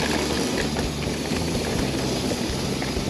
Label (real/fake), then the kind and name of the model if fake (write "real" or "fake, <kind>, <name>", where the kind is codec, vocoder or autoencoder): real